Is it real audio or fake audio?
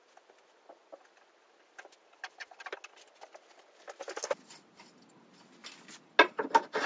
real